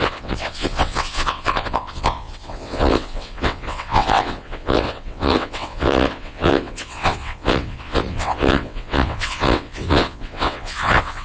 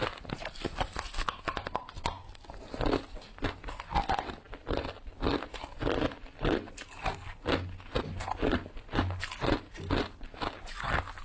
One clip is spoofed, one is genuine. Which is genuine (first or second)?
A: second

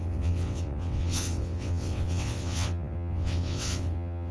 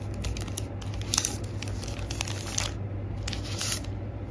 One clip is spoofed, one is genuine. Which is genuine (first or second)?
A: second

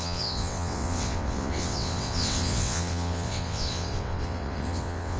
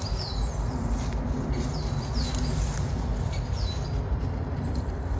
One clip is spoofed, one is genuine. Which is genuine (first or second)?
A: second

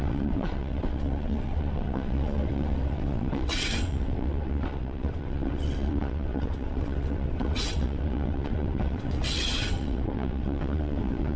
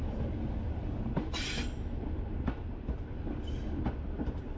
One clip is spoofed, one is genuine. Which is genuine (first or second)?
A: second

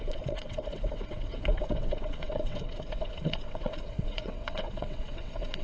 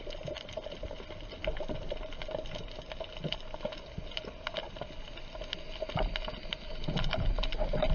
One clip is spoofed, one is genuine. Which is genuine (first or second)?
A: second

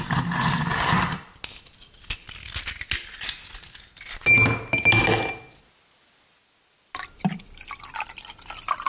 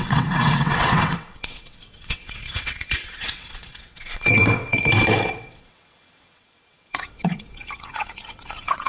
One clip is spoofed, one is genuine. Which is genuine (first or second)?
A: first